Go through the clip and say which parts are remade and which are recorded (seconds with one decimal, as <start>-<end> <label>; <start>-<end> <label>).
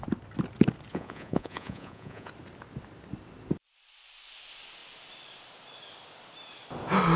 0.0-0.9 recorded; 0.9-2.3 remade; 2.3-7.2 recorded